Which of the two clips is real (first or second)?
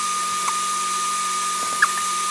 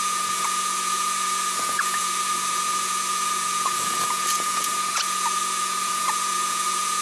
first